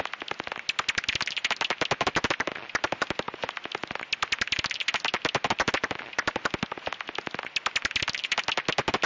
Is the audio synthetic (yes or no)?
no